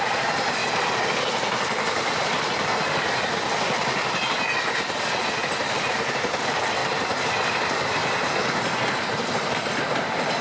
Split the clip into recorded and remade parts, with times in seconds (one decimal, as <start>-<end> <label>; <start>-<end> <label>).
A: 0.0-0.6 remade; 0.6-5.5 recorded; 5.5-6.8 remade; 6.8-7.5 recorded; 7.5-8.0 remade; 8.0-9.4 recorded; 9.4-10.4 remade